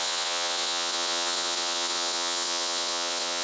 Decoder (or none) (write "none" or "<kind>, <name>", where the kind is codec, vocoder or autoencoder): vocoder, WaveNeXt